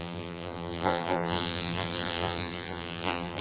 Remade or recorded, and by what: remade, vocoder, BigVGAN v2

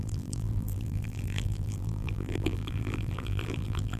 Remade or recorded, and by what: remade, vocoder, BigVGAN v2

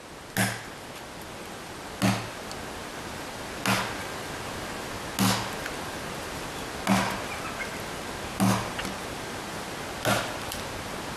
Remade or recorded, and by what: recorded